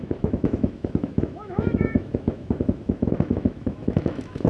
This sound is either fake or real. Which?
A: fake